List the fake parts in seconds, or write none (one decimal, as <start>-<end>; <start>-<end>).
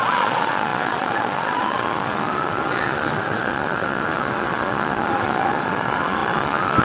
0.0-6.8